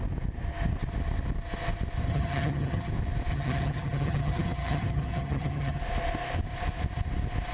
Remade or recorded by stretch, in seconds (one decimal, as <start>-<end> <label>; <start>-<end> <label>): 0.0-2.1 recorded; 2.1-2.9 remade; 2.9-3.3 recorded; 3.3-5.8 remade; 5.8-7.5 recorded